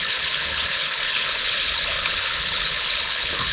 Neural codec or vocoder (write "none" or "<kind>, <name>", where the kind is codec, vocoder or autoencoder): codec, HILCodec